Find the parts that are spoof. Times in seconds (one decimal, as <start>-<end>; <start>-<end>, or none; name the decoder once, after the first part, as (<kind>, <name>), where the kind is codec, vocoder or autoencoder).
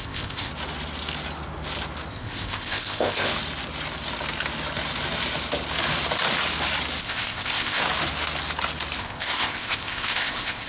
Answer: 0.0-0.5 (codec, ZipCodec); 2.1-3.3; 7.0-7.8; 9.0-10.7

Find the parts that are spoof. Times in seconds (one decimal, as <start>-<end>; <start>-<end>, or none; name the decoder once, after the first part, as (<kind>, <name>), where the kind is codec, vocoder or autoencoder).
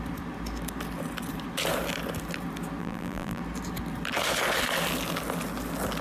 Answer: 2.8-3.4 (vocoder, BigVGAN v2)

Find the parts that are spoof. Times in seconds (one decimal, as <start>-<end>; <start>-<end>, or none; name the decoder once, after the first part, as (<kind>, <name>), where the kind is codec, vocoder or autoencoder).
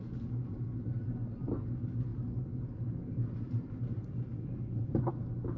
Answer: none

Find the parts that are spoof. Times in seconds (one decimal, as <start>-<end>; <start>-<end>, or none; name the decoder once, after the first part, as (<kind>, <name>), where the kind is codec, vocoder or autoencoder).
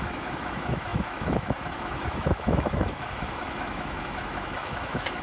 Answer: 0.0-5.2 (autoencoder, DAC-VAE)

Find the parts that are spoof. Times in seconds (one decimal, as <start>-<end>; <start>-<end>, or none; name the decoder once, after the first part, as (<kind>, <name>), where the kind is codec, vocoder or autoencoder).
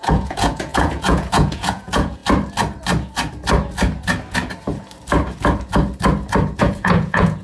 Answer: 0.0-2.2 (vocoder, Vocos); 6.6-7.4